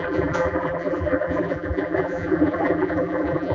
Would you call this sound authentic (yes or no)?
no